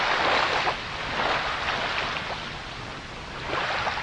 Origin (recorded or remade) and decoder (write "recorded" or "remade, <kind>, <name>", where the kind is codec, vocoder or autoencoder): recorded